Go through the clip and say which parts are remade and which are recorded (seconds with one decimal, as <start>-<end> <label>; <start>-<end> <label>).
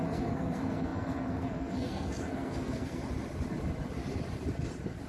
0.0-3.0 remade; 3.0-5.1 recorded